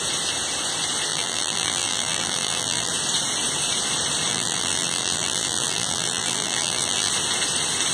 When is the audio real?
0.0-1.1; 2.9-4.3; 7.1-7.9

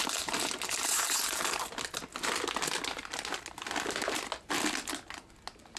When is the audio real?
0.5-5.8

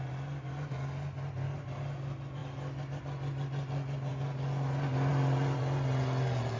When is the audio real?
0.0-5.1; 5.6-6.6

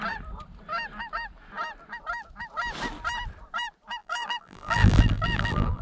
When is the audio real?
0.0-4.0

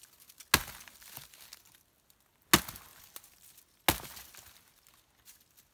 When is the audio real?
0.0-5.7

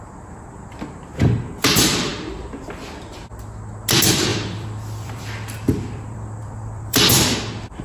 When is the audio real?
0.0-4.3; 7.0-7.8